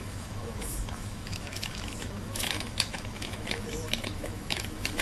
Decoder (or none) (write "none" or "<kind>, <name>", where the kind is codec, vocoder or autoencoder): autoencoder, DAC-VAE